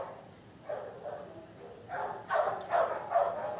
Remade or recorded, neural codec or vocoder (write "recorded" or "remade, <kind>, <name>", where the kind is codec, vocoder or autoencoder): recorded